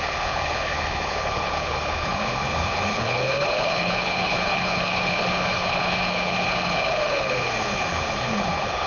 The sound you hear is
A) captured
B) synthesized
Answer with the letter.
B